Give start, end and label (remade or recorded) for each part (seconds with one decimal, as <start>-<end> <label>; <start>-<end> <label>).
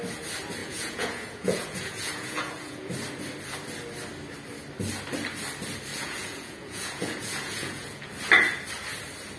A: 0.0-0.6 recorded; 0.6-2.9 remade; 2.9-5.9 recorded; 5.9-8.1 remade; 8.1-9.4 recorded